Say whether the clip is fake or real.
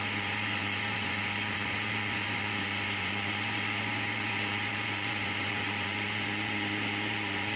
fake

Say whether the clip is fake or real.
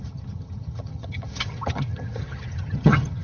fake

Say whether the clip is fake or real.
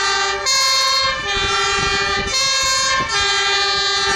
real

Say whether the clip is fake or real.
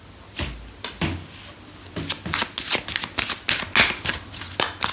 real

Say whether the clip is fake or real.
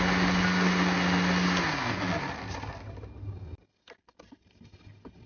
real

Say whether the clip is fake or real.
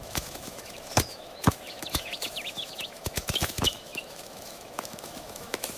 fake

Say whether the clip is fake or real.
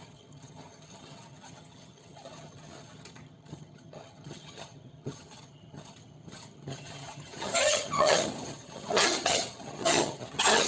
fake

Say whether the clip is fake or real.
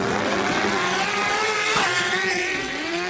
fake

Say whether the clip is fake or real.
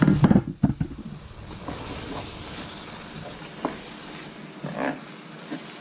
real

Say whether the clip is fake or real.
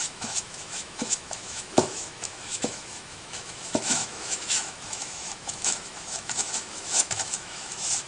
fake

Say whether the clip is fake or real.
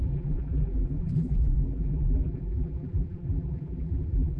fake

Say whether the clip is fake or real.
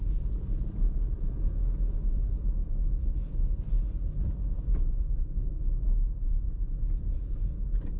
fake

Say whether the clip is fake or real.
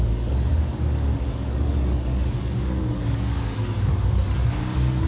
fake